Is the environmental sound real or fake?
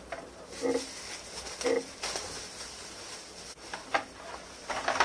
real